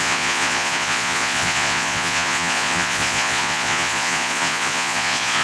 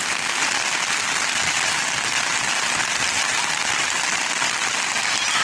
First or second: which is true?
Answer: second